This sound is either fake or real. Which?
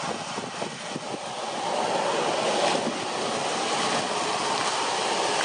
real